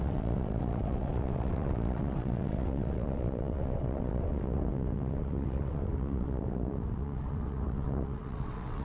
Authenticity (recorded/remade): remade